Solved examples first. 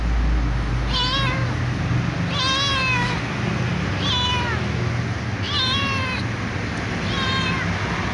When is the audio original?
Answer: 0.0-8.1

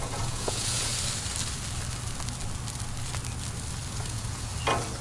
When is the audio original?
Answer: 0.9-3.9; 4.5-5.0

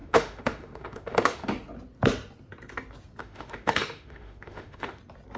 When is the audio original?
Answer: 1.5-3.2; 5.0-5.4

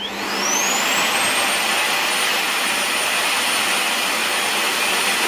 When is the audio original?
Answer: 0.0-5.3

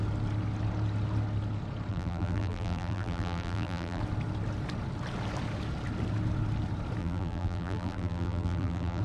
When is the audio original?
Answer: 0.0-1.9; 4.0-7.0

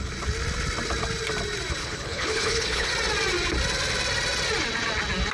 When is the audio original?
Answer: 0.0-1.8; 2.9-5.3

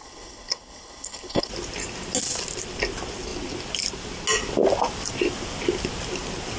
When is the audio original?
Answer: 1.5-6.6